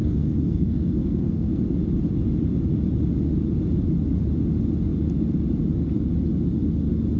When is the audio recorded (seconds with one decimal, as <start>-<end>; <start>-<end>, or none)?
1.6-7.2

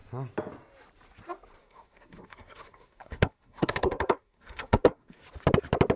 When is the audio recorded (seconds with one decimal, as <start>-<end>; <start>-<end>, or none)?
0.0-1.6; 5.2-6.0

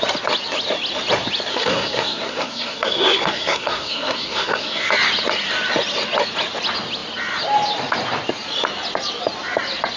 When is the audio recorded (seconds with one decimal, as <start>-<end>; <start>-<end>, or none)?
0.0-1.5; 4.9-10.0

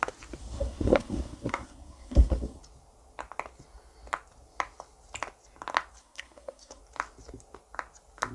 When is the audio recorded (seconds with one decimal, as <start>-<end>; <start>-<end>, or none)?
0.0-0.4; 2.6-6.0; 6.8-8.3

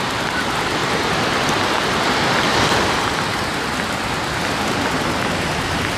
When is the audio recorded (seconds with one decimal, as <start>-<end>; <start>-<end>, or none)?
0.0-6.0